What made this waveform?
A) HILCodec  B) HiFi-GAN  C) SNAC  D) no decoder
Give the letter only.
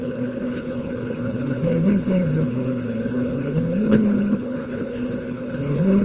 A